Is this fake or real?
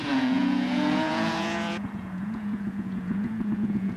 fake